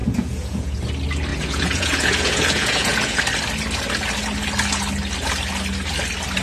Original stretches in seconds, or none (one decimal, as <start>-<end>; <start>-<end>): 0.8-1.3; 3.2-6.4